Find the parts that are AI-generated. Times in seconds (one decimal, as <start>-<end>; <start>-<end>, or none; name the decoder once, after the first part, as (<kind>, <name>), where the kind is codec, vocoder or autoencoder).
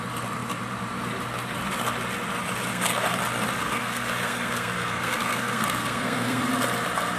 2.7-3.2 (codec, SNAC); 3.6-6.5